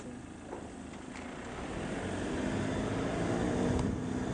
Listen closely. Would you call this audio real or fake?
real